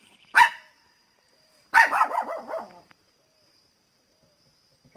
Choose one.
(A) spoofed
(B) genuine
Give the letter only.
A